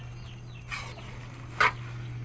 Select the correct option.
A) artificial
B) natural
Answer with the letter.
B